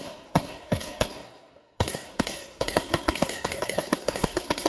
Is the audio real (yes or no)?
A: no